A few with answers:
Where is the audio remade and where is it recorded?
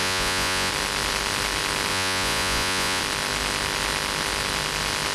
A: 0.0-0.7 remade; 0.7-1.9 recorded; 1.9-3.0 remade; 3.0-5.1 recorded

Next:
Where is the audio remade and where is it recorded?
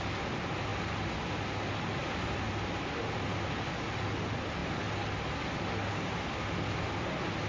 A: 0.0-7.5 recorded